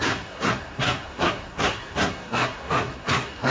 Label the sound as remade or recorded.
remade